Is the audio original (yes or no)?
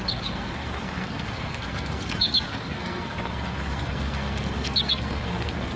no